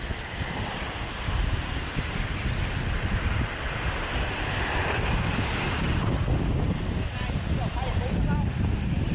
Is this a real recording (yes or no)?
yes